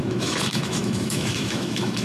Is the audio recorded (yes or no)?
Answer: no